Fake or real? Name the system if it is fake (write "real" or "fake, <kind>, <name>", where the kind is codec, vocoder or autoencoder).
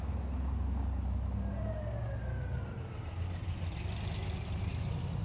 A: real